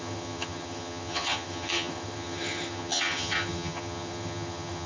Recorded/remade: remade